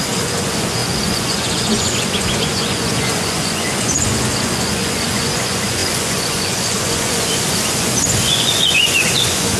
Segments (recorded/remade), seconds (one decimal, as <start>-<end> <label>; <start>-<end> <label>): 0.0-9.6 remade

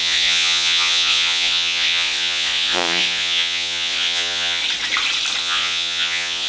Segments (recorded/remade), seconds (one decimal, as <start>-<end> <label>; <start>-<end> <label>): 0.0-4.6 remade; 4.6-5.4 recorded; 5.4-6.5 remade

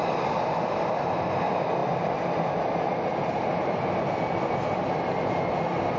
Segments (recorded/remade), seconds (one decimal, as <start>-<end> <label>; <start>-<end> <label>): 0.0-6.0 recorded